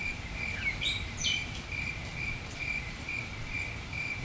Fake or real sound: fake